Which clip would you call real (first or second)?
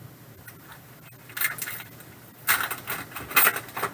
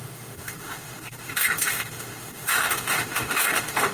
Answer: first